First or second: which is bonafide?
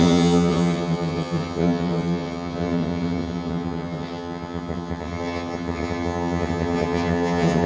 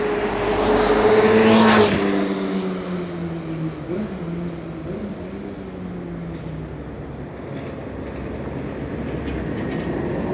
second